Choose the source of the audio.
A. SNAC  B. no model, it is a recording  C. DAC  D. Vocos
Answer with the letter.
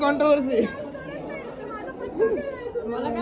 B